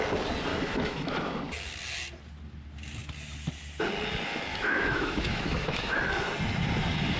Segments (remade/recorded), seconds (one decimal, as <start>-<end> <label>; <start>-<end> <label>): 0.0-0.5 recorded; 0.5-1.1 remade; 1.1-4.5 recorded; 4.5-6.0 remade; 6.0-7.2 recorded